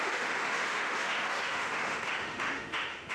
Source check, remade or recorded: remade